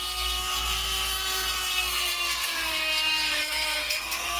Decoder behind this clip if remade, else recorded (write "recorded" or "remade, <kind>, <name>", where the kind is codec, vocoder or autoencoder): remade, codec, SNAC